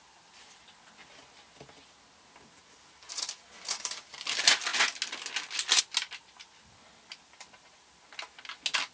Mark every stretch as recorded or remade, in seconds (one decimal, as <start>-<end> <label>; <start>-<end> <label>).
0.0-8.9 recorded